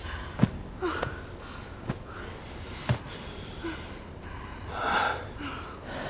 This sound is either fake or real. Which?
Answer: real